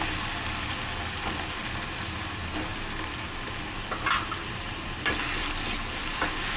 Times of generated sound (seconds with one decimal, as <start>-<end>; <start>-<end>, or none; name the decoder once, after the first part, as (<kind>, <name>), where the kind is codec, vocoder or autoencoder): none